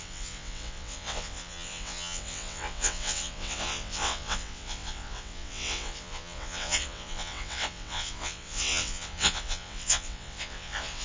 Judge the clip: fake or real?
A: fake